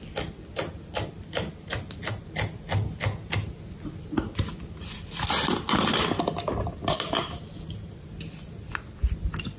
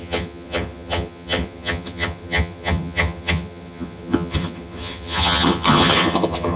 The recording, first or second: first